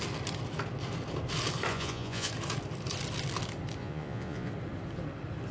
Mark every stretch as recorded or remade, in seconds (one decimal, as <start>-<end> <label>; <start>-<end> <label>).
0.0-1.7 recorded; 1.7-2.3 remade; 2.3-3.8 recorded; 3.8-4.5 remade; 4.5-5.5 recorded